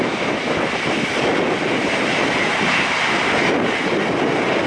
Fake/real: real